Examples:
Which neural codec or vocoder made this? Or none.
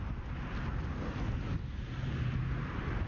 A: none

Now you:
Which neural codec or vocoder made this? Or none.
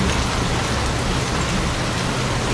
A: none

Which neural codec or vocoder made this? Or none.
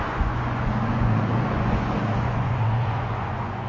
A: vocoder, Vocos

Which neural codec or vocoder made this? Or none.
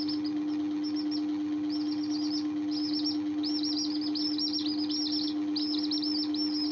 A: none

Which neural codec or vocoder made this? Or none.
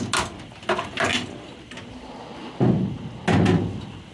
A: none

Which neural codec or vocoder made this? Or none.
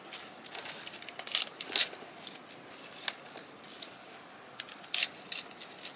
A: none